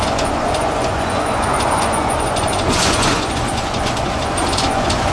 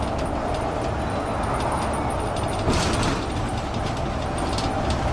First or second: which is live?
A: second